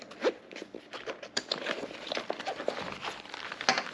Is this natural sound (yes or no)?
yes